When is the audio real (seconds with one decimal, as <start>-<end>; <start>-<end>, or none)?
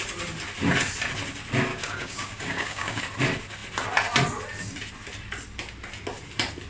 0.0-1.7; 3.0-6.7